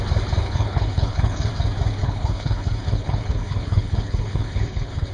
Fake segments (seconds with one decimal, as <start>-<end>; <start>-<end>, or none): 0.4-1.5; 2.0-5.1